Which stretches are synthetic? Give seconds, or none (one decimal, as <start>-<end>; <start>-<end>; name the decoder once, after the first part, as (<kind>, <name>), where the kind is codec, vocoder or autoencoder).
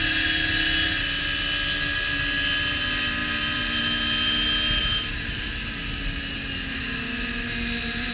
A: 4.8-5.5 (vocoder, BigVGAN v2)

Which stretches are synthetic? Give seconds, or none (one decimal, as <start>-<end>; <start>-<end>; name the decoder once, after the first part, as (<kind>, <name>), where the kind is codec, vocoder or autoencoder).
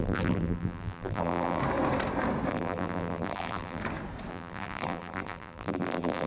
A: 0.0-1.6 (vocoder, BigVGAN v2); 2.5-3.8; 4.3-6.3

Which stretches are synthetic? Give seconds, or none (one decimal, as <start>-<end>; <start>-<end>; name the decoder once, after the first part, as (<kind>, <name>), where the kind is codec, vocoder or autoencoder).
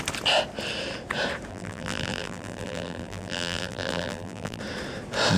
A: 1.5-4.6 (vocoder, BigVGAN v2)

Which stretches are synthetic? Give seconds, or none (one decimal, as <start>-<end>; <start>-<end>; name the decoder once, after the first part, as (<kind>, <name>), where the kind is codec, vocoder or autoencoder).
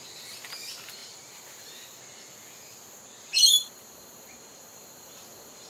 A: 1.0-2.0 (vocoder, BigVGAN v2); 3.3-5.7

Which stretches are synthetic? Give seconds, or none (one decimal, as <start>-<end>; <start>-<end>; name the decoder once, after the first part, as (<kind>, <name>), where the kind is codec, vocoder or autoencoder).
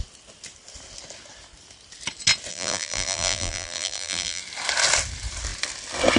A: 2.5-4.4 (vocoder, BigVGAN v2)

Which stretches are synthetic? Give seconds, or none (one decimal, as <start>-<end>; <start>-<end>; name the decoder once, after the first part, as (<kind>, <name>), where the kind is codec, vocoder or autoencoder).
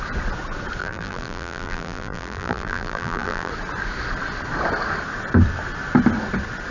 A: 0.8-3.5 (vocoder, BigVGAN v2)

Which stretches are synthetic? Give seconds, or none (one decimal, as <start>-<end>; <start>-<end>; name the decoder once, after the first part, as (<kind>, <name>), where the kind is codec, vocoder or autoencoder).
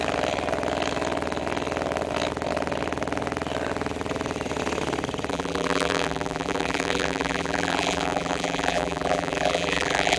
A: 5.3-10.2 (vocoder, BigVGAN v2)